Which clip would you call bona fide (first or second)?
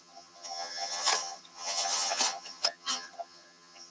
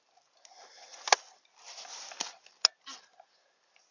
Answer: second